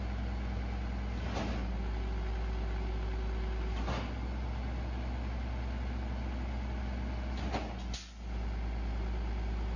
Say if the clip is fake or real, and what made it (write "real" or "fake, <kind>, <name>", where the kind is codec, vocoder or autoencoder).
real